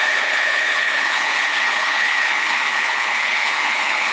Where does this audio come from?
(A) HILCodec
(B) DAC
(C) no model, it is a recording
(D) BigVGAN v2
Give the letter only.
A